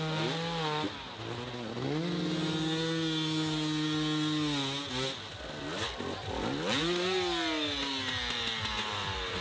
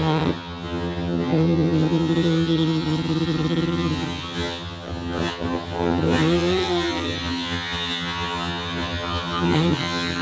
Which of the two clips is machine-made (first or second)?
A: second